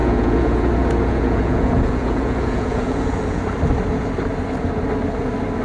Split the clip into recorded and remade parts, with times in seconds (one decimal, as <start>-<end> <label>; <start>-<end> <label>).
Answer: 0.0-3.4 remade; 3.4-5.6 recorded